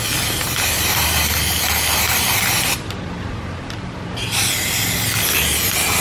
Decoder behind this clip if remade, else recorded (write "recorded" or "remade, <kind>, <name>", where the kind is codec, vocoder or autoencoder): recorded